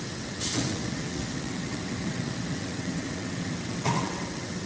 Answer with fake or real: fake